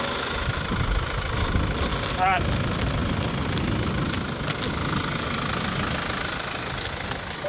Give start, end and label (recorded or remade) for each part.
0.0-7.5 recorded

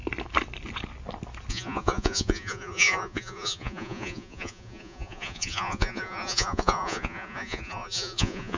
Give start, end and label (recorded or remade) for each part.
0.0-1.5 recorded; 1.5-8.6 remade

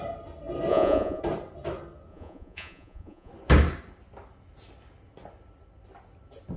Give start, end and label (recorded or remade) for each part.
0.0-0.7 recorded; 0.7-1.2 remade; 1.2-2.1 recorded; 2.1-3.3 remade; 3.3-6.6 recorded

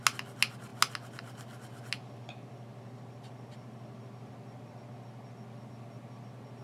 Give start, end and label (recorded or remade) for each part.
0.0-6.6 recorded

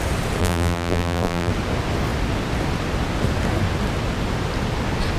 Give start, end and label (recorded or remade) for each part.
0.0-0.4 recorded; 0.4-1.5 remade; 1.5-5.2 recorded